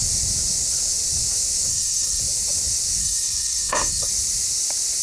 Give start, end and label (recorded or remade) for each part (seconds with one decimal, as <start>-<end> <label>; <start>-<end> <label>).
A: 0.0-1.7 recorded; 1.7-2.2 remade; 2.2-3.0 recorded; 3.0-4.1 remade; 4.1-5.0 recorded